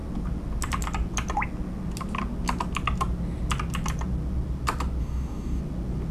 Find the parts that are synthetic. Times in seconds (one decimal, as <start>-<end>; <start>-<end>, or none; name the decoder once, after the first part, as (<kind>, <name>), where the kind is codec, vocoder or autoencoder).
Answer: 5.0-5.6 (codec, DAC)